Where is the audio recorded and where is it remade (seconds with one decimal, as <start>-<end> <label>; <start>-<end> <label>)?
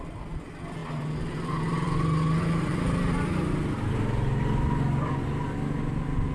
0.0-6.3 recorded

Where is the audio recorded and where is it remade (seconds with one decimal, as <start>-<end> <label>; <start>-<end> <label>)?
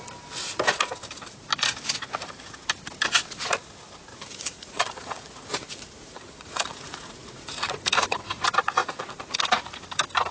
0.0-4.1 recorded; 4.1-8.2 remade; 8.2-8.8 recorded; 8.8-9.4 remade; 9.4-10.3 recorded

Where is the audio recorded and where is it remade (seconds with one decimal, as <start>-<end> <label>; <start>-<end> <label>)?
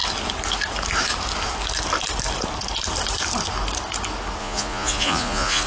0.0-4.4 recorded; 4.4-5.7 remade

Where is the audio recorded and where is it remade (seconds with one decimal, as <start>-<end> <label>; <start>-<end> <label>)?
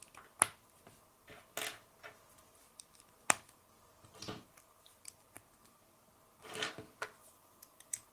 0.0-7.2 recorded; 7.2-8.1 remade